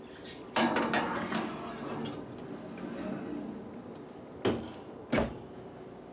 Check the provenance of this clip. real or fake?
real